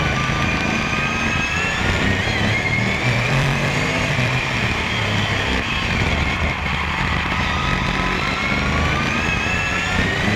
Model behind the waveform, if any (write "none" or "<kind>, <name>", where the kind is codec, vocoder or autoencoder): vocoder, BigVGAN v2